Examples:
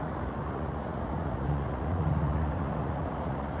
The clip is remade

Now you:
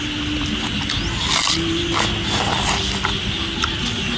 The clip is recorded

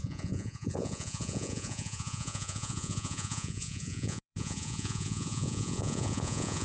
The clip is remade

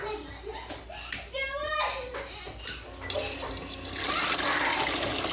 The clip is recorded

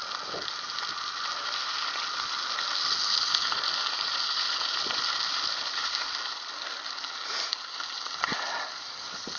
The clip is recorded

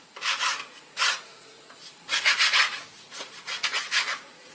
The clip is remade